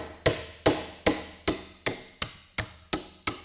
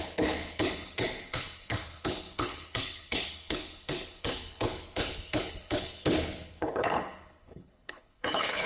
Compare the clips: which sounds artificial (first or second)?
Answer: second